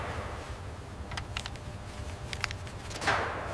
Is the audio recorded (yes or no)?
yes